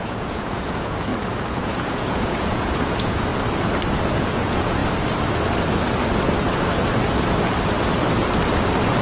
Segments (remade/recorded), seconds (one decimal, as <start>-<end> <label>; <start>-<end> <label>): 0.0-1.1 remade; 1.1-1.6 recorded; 1.6-3.3 remade; 3.3-4.1 recorded; 4.1-4.8 remade; 4.8-9.0 recorded